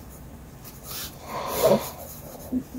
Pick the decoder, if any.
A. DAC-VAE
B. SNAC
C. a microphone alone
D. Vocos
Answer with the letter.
C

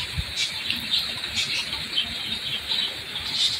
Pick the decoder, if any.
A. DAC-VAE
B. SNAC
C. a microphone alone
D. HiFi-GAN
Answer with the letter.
C